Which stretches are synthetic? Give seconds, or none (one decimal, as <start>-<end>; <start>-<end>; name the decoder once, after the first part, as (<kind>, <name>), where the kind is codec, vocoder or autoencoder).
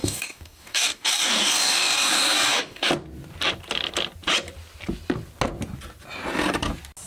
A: 0.0-2.9 (codec, DAC)